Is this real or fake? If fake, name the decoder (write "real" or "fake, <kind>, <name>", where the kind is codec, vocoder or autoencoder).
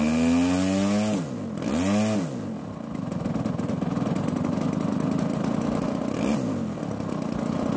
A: real